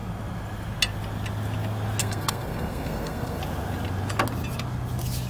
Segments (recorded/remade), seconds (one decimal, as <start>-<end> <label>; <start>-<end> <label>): 0.0-2.0 recorded; 2.0-3.4 remade; 3.4-5.3 recorded